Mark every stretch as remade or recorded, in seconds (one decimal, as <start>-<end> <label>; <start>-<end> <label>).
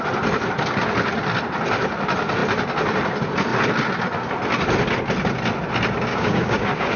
0.0-6.1 recorded; 6.1-7.0 remade